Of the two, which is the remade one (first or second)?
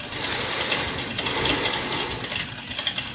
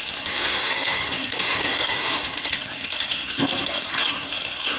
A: second